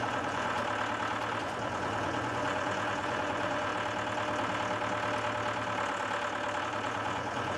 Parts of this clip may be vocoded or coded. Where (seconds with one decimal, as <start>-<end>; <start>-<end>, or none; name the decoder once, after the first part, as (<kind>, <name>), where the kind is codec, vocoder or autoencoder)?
0.0-0.6 (vocoder, Vocos); 1.4-3.7; 6.6-7.6